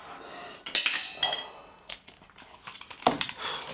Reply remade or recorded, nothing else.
recorded